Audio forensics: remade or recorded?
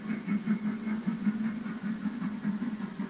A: remade